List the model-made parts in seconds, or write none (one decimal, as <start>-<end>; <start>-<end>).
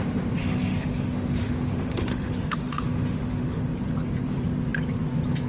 0.4-3.6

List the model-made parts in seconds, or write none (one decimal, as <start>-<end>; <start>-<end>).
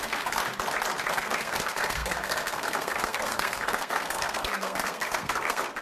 0.0-0.4; 1.1-5.8